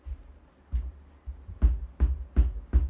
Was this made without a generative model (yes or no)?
yes